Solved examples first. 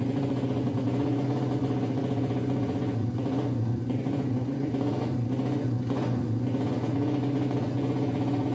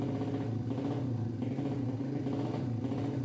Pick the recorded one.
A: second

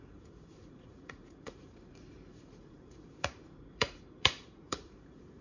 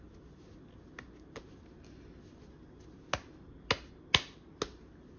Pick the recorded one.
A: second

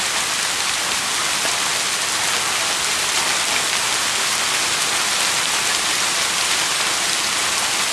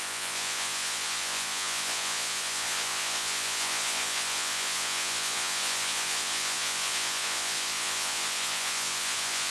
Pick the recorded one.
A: first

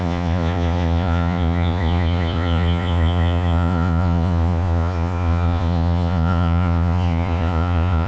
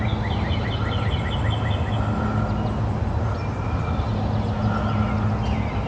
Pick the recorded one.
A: second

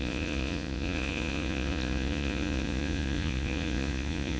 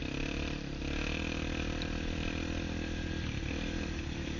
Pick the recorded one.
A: second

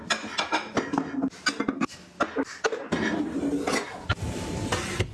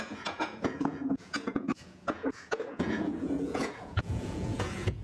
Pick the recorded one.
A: first